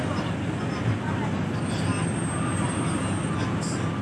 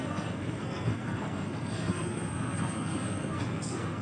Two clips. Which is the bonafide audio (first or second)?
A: first